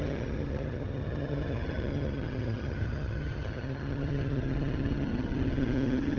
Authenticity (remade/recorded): remade